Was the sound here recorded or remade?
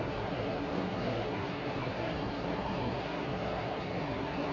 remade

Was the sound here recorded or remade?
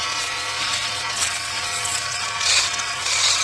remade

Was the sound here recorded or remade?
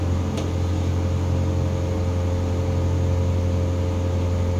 recorded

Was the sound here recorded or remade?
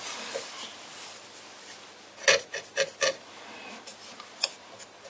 recorded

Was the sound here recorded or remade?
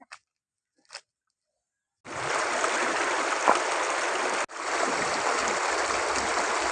recorded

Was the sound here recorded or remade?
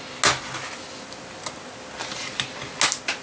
recorded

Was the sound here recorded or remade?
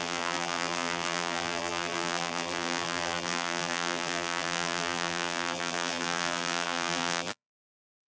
remade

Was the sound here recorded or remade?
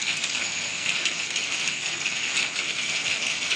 remade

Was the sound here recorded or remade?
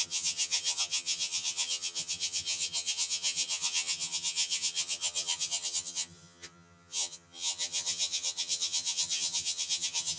remade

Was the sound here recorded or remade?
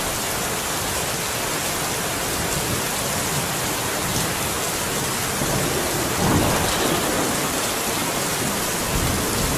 recorded